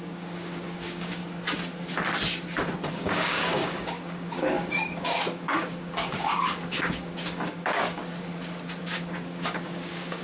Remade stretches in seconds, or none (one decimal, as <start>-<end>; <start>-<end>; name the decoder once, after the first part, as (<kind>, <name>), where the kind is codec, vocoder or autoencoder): 0.0-1.2 (codec, DAC); 2.9-8.0; 8.8-10.2